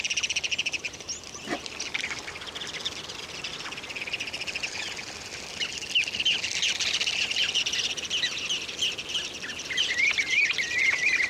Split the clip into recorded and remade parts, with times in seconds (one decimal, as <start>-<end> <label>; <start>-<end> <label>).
0.0-11.3 remade